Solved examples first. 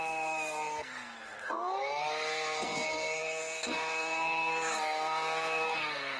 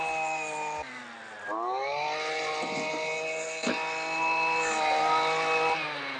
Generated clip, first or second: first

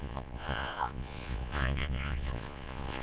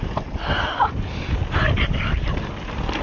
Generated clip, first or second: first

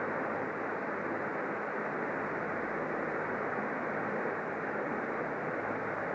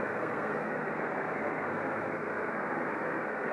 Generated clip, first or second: second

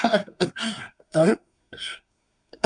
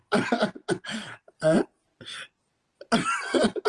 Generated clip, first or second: first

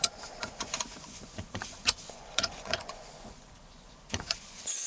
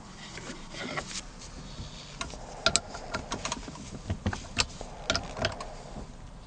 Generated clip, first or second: first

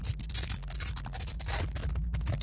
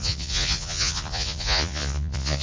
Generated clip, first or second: second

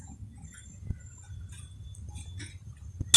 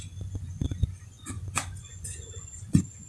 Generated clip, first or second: second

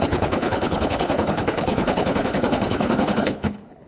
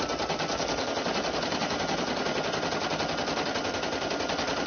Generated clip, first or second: first